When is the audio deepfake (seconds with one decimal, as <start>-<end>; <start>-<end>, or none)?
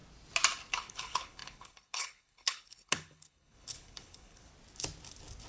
0.7-4.5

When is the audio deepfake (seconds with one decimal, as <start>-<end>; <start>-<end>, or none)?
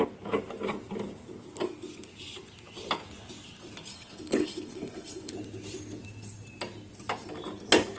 3.9-5.3